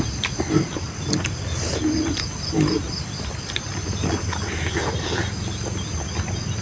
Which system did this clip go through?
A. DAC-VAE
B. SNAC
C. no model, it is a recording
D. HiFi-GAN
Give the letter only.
C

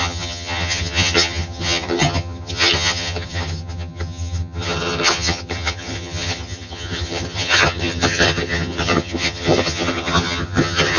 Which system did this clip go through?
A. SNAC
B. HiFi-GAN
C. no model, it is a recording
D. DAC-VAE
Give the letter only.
B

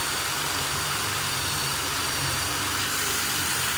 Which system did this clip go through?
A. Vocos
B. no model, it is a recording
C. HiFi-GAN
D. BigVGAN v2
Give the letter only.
D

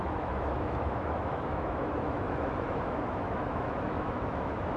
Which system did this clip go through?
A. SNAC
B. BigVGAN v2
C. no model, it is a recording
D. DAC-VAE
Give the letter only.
D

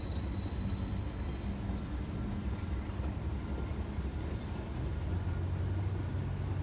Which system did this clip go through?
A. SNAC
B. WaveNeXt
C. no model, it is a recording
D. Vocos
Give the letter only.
C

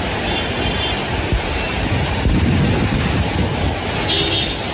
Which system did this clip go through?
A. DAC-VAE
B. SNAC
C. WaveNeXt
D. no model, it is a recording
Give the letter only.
D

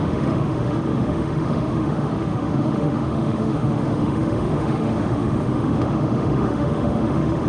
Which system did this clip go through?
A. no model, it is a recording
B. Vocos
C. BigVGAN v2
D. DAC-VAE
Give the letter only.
D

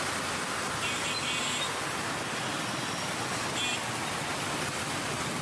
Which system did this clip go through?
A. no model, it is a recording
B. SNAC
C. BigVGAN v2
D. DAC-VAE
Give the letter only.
A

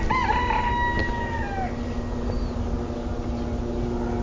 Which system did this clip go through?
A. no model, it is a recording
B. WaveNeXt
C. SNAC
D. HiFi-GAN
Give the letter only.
A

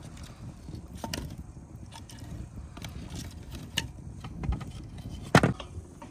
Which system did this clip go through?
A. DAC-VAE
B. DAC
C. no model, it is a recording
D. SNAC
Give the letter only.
C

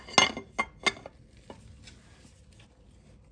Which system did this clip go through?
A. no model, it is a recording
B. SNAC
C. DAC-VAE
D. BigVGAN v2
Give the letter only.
A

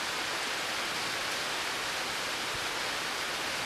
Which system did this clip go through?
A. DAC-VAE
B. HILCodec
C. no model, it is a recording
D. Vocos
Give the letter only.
C